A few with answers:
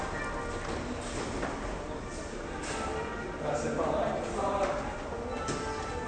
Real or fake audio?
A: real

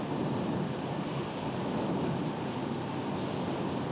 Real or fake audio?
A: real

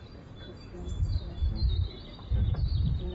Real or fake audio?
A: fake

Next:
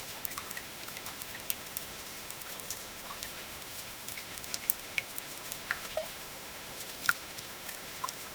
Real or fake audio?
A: fake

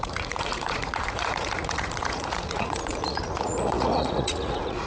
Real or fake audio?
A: fake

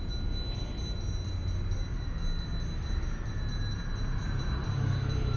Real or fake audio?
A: real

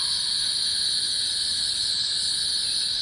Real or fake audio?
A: real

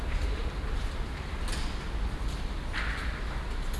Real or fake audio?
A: real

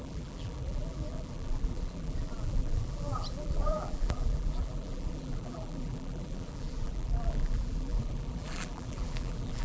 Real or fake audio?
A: fake